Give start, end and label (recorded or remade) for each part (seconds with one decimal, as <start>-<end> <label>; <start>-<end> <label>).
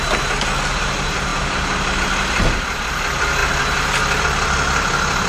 0.0-5.3 recorded